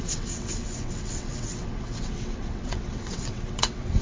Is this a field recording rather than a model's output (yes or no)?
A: no